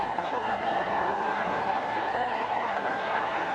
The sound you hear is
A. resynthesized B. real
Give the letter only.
A